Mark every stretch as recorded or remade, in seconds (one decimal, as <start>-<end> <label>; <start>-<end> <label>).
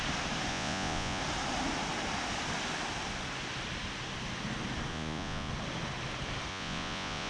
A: 0.0-0.5 recorded; 0.5-1.2 remade; 1.2-4.9 recorded; 4.9-5.5 remade; 5.5-6.5 recorded; 6.5-7.3 remade